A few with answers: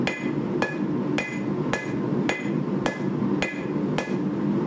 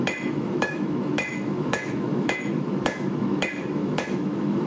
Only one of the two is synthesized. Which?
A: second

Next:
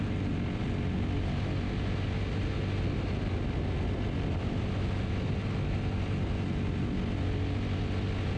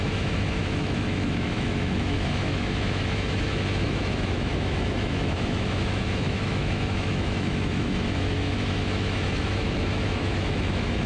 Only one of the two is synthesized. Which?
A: second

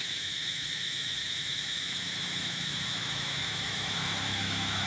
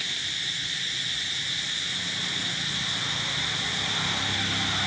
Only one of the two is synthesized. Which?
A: first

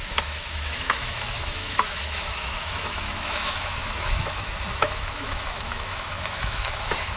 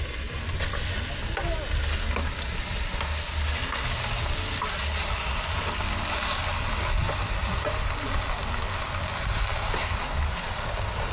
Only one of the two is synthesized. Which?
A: first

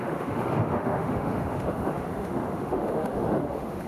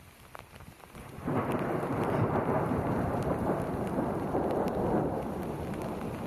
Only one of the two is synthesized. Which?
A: first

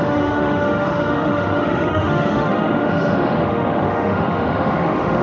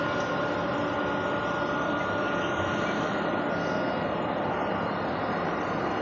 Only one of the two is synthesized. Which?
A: first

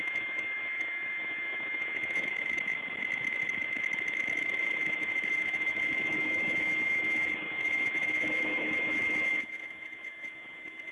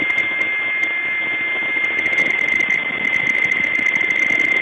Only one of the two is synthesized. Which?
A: first